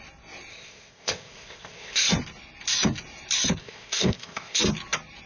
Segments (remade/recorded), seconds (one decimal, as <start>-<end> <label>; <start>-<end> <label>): 0.0-0.5 recorded; 0.5-2.1 remade; 2.1-3.6 recorded; 3.6-4.6 remade; 4.6-5.3 recorded